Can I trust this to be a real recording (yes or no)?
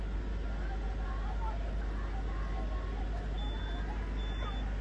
yes